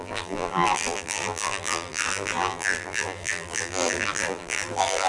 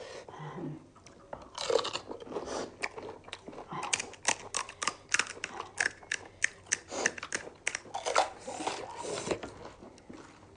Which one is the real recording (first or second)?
second